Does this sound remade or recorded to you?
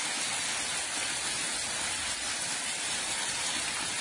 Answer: recorded